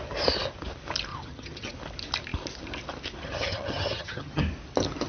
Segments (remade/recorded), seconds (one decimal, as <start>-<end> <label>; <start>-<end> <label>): 0.0-1.1 recorded; 1.1-1.7 remade; 1.7-3.2 recorded; 3.2-4.4 remade; 4.4-5.1 recorded